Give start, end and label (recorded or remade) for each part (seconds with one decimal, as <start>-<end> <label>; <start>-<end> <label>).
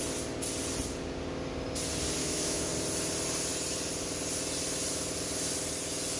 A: 0.0-2.2 recorded; 2.2-2.7 remade; 2.7-6.2 recorded